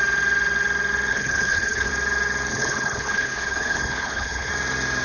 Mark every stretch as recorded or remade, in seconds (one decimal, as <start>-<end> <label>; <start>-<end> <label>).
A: 0.0-1.1 recorded; 1.1-1.9 remade; 1.9-2.5 recorded; 2.5-4.5 remade; 4.5-5.0 recorded